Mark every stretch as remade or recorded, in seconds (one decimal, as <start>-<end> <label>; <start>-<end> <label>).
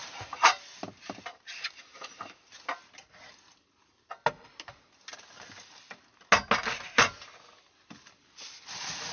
0.0-9.1 recorded